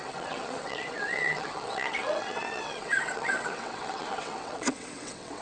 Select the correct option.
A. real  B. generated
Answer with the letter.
B